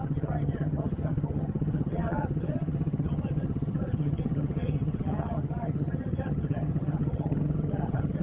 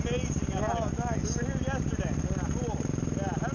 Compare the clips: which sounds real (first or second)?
second